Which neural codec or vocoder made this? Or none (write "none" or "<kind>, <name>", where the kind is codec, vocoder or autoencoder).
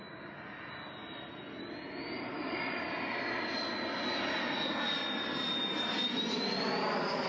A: none